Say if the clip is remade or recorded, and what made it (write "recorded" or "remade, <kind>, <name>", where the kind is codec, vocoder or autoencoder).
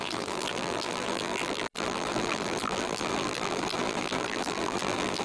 remade, vocoder, BigVGAN v2